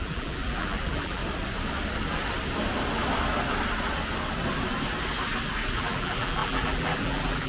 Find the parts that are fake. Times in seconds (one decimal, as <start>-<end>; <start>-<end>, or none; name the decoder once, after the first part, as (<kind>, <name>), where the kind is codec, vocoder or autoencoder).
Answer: 0.0-1.2 (vocoder, BigVGAN v2); 5.7-7.5

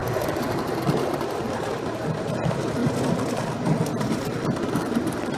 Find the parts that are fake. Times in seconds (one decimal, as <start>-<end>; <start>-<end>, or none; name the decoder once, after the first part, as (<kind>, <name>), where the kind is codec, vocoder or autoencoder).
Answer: 0.0-2.1 (vocoder, BigVGAN v2); 2.8-3.5; 3.9-5.4